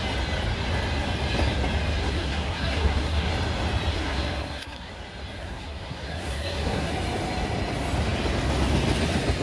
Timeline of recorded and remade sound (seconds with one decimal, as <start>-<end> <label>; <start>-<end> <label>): 0.0-2.0 recorded; 2.0-3.3 remade; 3.3-3.9 recorded; 3.9-4.9 remade; 4.9-5.4 recorded; 5.4-6.9 remade; 6.9-9.4 recorded